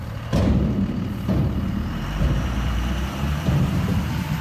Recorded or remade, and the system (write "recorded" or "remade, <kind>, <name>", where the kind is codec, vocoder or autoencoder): remade, vocoder, BigVGAN v2